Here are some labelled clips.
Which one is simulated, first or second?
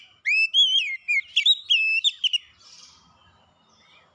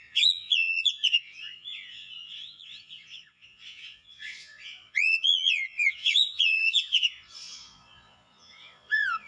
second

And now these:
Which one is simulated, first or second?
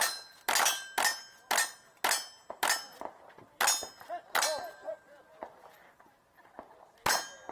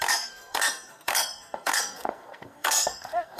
second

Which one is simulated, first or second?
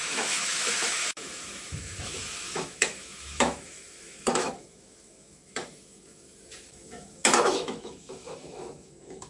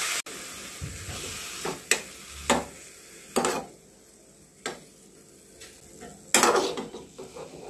first